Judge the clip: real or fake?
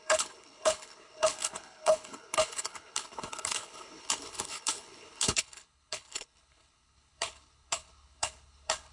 fake